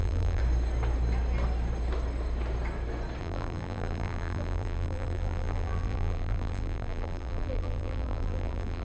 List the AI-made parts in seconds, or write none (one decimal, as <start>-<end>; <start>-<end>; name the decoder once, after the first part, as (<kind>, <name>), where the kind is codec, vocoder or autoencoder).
0.0-0.4 (vocoder, BigVGAN v2); 3.2-8.8